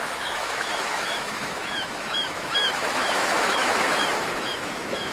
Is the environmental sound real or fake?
fake